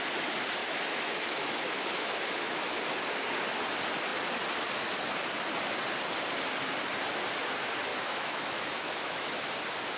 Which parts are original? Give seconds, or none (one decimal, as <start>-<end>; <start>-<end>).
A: 0.0-0.6; 2.8-7.9; 9.5-10.0